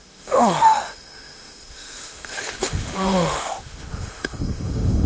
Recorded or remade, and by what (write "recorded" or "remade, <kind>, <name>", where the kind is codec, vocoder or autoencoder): remade, autoencoder, DAC-VAE